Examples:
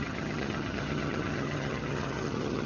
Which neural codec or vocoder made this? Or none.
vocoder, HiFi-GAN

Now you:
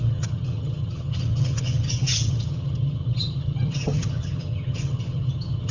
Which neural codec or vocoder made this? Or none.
vocoder, HiFi-GAN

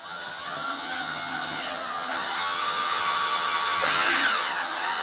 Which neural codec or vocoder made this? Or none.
vocoder, HiFi-GAN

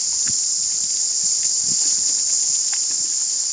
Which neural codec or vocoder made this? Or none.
none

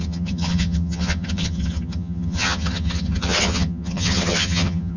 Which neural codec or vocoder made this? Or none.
vocoder, HiFi-GAN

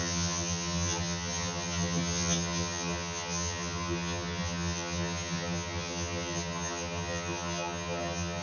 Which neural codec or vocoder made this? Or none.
vocoder, HiFi-GAN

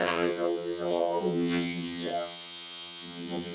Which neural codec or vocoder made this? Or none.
vocoder, HiFi-GAN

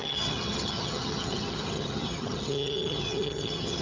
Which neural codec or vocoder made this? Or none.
vocoder, HiFi-GAN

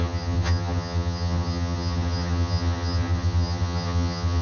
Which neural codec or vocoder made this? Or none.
vocoder, HiFi-GAN